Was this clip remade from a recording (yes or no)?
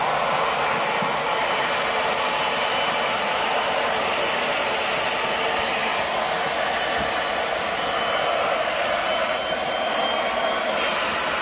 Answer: no